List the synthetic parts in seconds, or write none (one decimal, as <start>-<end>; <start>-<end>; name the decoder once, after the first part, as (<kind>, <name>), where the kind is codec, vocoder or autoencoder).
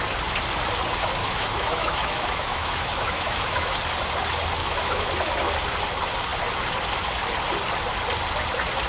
1.2-3.8 (autoencoder, DAC-VAE); 4.6-5.1